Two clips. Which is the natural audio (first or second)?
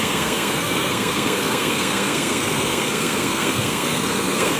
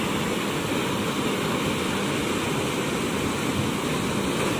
second